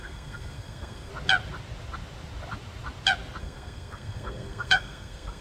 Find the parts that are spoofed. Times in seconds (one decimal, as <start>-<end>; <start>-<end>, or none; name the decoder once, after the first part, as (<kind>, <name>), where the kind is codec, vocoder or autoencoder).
0.0-1.1 (codec, SNAC); 3.4-5.4